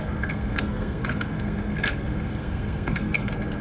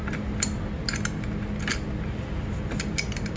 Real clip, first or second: second